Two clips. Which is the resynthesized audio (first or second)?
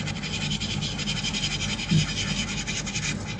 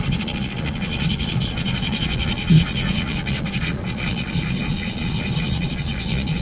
second